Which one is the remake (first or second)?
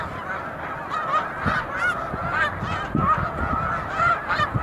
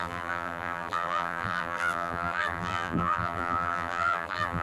second